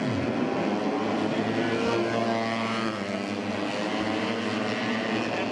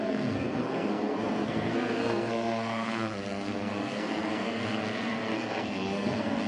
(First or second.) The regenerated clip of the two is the second